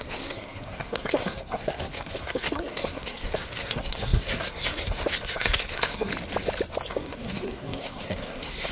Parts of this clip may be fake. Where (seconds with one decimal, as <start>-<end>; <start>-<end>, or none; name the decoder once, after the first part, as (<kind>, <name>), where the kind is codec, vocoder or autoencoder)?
0.0-6.1 (codec, SNAC); 6.9-8.7